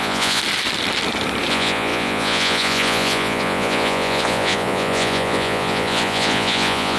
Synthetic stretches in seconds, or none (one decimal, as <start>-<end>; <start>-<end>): 0.0-0.4; 1.5-7.0